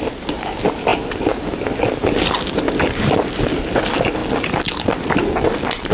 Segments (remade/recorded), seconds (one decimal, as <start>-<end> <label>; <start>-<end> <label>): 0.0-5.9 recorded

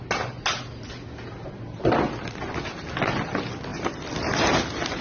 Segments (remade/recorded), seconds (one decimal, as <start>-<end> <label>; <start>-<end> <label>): 0.0-5.0 recorded

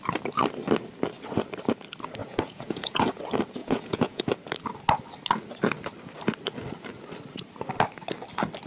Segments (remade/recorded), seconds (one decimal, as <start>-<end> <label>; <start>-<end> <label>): 0.0-2.2 recorded; 2.2-3.2 remade; 3.2-3.6 recorded; 3.6-4.2 remade; 4.2-8.7 recorded

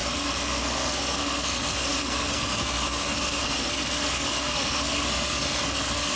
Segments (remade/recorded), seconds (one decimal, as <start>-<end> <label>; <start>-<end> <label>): 0.0-6.2 remade

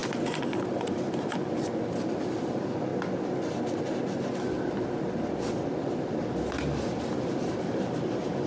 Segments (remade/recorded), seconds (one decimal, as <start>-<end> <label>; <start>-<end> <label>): 0.0-0.7 recorded; 0.7-2.9 remade; 2.9-5.8 recorded; 5.8-8.5 remade